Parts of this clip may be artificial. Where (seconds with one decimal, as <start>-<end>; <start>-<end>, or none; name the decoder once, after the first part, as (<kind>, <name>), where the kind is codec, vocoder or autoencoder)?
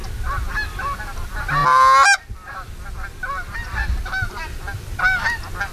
none